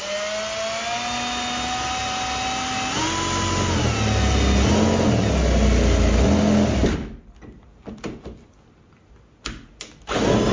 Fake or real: real